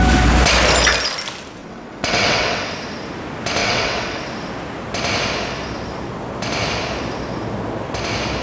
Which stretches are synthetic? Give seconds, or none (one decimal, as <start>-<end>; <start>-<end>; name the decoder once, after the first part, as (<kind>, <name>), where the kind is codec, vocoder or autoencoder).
1.6-2.7 (vocoder, WaveNeXt); 3.6-4.2